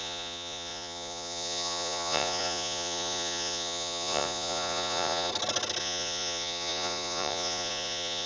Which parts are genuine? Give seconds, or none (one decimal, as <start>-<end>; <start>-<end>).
5.3-5.8